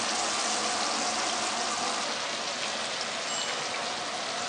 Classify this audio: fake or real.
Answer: real